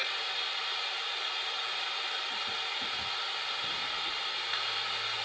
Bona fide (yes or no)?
yes